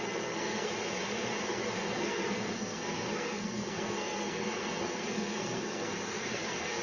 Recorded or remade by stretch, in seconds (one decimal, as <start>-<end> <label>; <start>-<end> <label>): 0.0-0.7 remade; 0.7-1.4 recorded; 1.4-6.8 remade